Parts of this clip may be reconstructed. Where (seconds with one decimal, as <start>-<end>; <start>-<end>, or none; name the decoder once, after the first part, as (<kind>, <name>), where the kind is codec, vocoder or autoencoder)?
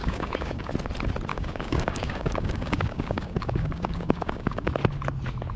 0.0-0.7 (codec, DAC); 1.3-4.7